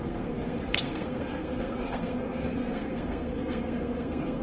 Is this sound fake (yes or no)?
yes